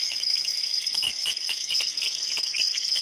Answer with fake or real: fake